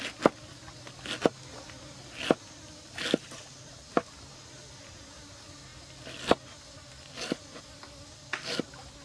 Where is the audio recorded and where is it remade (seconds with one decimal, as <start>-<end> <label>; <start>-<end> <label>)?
0.0-9.0 recorded